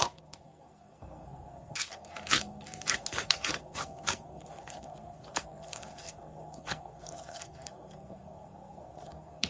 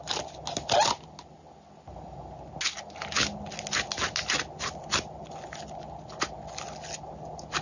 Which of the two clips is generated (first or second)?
first